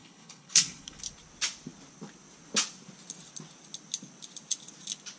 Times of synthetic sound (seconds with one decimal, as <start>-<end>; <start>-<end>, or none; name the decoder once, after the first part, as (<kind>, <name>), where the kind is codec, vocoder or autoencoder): 0.0-1.0 (codec, HILCodec)